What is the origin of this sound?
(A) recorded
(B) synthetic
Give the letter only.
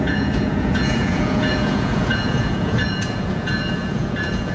B